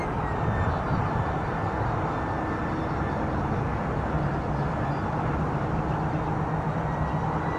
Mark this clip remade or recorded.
recorded